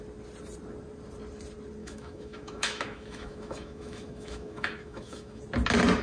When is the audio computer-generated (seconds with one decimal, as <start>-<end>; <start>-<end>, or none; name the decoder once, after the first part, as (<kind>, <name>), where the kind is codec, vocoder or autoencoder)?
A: 1.8-5.4 (autoencoder, DAC-VAE)